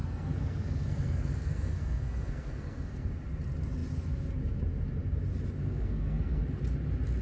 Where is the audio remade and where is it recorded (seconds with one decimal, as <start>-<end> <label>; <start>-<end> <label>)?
0.0-3.1 remade; 3.1-5.6 recorded; 5.6-6.4 remade; 6.4-7.2 recorded